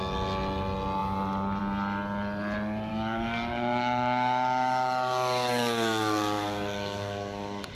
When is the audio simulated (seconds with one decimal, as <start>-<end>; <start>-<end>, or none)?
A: 2.9-7.7